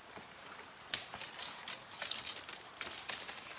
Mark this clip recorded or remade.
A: recorded